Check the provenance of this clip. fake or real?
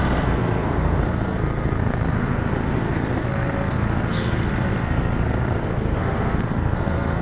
fake